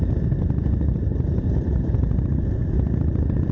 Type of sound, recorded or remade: remade